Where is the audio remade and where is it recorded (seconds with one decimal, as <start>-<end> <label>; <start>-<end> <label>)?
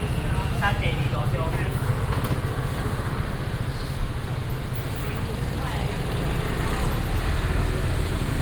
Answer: 0.0-3.7 remade; 3.7-7.9 recorded; 7.9-8.4 remade